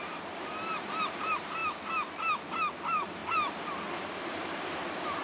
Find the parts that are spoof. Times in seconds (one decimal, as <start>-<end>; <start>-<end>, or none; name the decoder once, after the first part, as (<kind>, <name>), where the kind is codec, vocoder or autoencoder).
0.0-1.6 (vocoder, BigVGAN v2); 2.7-5.2